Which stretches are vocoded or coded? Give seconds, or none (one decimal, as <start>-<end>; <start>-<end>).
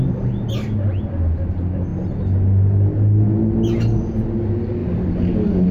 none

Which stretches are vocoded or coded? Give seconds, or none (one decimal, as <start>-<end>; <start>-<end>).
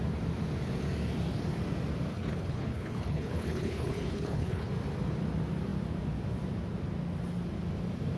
2.1-4.7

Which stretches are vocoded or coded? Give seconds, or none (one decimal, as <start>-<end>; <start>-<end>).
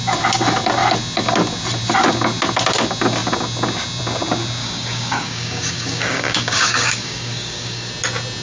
4.6-7.9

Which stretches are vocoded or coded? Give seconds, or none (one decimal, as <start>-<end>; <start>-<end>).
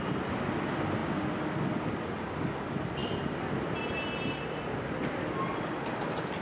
none